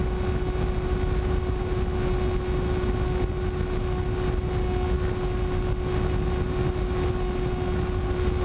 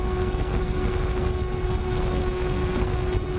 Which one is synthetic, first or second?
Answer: second